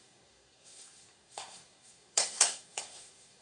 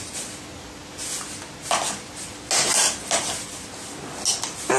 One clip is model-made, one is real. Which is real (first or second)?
second